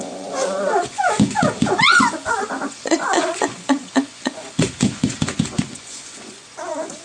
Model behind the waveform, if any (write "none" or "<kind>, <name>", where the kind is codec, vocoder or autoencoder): vocoder, Vocos